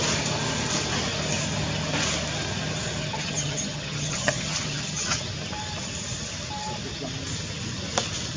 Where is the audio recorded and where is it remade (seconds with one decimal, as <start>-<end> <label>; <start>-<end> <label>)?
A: 0.0-3.0 recorded; 3.0-5.2 remade; 5.2-8.4 recorded